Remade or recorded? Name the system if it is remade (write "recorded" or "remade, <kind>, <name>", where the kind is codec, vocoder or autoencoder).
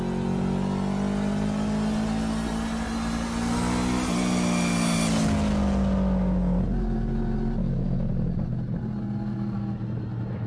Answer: recorded